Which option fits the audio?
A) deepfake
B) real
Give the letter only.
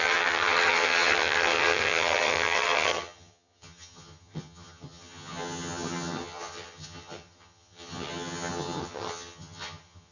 A